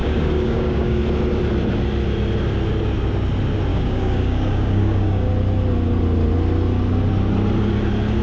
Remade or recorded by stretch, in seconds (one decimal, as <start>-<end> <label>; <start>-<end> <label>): 0.0-1.0 remade; 1.0-3.7 recorded; 3.7-5.3 remade; 5.3-8.2 recorded